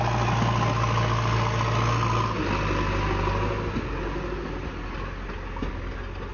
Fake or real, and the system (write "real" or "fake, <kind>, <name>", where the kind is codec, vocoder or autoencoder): real